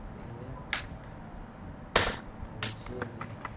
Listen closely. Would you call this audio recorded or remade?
recorded